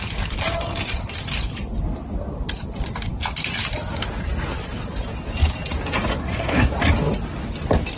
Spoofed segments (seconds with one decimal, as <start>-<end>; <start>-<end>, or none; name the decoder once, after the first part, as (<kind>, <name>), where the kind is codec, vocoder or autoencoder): 6.2-6.7 (codec, SNAC)